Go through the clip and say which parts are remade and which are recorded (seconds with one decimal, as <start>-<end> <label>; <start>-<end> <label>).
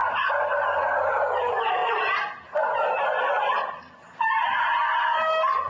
0.0-5.7 recorded